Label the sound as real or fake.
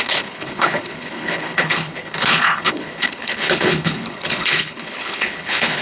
fake